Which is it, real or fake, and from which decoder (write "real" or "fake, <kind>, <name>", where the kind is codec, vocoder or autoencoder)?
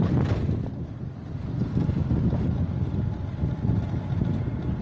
real